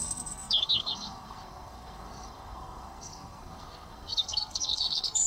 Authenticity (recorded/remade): remade